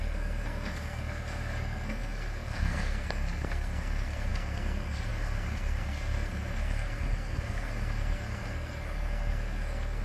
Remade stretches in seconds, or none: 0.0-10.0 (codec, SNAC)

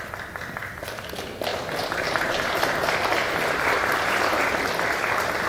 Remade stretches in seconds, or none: 1.5-4.4 (vocoder, BigVGAN v2)